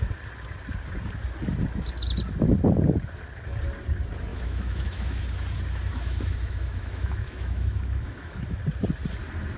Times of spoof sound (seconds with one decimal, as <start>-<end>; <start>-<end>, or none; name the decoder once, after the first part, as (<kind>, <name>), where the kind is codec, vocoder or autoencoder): 4.3-5.2 (autoencoder, DAC-VAE); 5.9-8.6